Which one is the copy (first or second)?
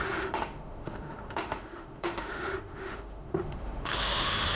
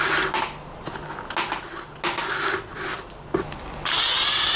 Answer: first